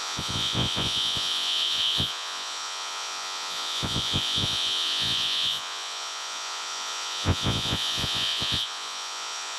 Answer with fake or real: fake